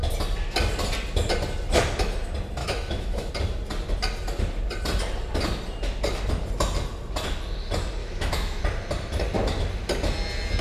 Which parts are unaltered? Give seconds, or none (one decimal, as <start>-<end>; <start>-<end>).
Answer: 0.0-2.6; 3.3-8.0; 8.6-10.6